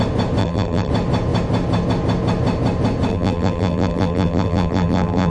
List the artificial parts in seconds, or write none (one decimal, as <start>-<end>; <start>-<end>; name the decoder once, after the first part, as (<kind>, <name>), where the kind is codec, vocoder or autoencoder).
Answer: 0.4-0.9 (vocoder, BigVGAN v2); 3.1-5.3

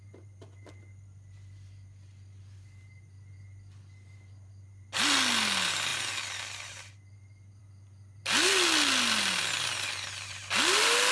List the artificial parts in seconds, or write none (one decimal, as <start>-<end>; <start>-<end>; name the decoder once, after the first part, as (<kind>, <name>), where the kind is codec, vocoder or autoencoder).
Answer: none

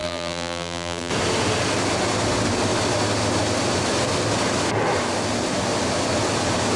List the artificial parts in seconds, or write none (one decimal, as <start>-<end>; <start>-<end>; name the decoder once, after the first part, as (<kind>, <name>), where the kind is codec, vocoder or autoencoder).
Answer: 0.0-1.1 (vocoder, BigVGAN v2)

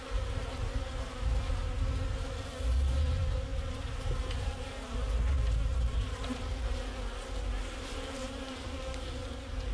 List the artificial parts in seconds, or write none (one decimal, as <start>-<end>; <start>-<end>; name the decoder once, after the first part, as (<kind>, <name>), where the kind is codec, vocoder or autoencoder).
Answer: 3.5-4.7 (vocoder, BigVGAN v2); 5.7-6.8; 7.6-9.7

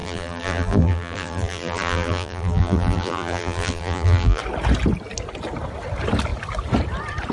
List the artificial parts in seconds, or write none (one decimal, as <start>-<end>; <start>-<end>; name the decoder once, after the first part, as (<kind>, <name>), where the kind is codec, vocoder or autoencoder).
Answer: 0.0-4.4 (vocoder, BigVGAN v2)